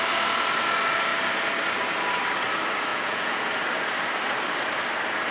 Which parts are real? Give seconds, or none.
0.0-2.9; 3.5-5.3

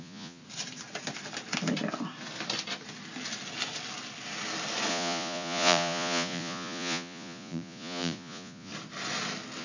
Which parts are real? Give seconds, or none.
0.4-4.9; 8.7-9.6

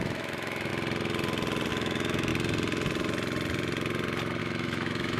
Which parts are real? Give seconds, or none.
0.7-1.7; 2.3-4.4